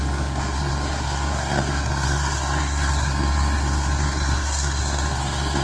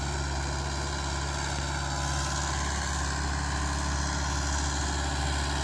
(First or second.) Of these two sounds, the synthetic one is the first